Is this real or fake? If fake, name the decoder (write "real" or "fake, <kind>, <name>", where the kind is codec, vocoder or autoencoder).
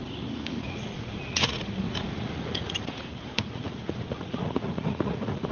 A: fake, vocoder, Vocos